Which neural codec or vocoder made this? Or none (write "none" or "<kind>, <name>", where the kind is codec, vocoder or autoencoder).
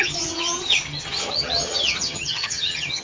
vocoder, HiFi-GAN